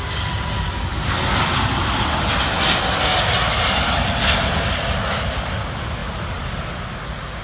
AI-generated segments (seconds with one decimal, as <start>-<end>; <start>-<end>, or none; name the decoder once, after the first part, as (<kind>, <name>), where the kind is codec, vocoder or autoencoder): none